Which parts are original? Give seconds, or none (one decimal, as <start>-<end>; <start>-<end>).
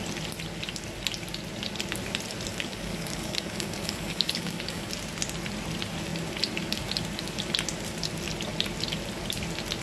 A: 0.0-2.5; 4.9-9.8